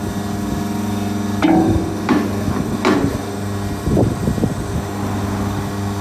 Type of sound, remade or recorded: recorded